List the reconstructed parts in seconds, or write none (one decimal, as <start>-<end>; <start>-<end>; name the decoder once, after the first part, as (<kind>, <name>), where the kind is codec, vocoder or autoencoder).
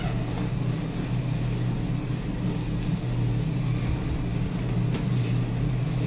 none